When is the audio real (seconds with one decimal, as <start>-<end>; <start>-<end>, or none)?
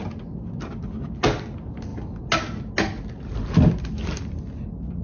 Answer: 0.0-5.0